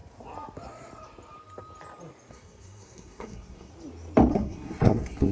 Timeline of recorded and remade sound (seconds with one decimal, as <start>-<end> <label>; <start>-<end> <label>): 0.0-2.3 recorded; 2.3-3.7 remade; 3.7-4.3 recorded; 4.3-5.3 remade